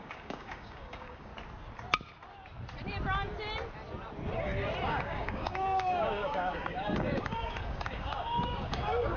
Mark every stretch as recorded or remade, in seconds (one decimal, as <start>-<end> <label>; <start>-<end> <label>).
0.0-1.3 remade; 1.3-4.9 recorded; 4.9-9.2 remade